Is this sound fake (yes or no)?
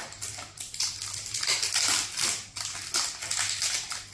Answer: no